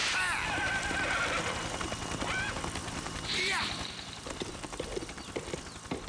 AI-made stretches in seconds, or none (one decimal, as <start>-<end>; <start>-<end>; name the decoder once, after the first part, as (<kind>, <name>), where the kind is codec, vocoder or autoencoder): 2.8-6.1 (vocoder, BigVGAN v2)